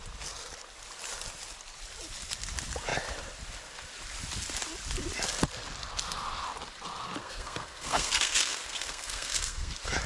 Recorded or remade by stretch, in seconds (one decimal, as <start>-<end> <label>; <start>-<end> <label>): 0.0-7.2 recorded; 7.2-9.7 remade; 9.7-10.1 recorded